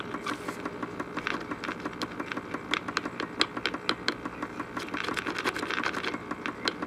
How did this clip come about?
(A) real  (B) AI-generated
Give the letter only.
A